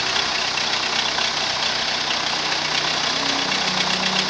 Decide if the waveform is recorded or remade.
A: recorded